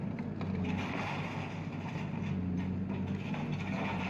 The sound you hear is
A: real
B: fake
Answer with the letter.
A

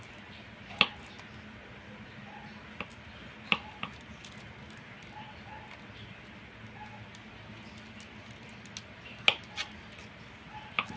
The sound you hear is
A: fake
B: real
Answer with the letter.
B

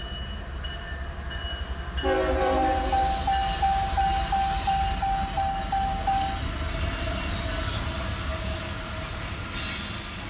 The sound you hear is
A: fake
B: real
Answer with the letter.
B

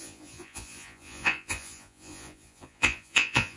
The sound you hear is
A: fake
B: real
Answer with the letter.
A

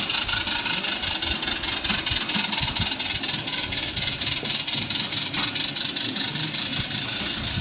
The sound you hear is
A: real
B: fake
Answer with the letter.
A